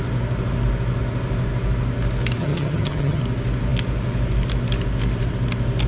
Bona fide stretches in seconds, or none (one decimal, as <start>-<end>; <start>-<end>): 0.0-2.4; 3.2-5.9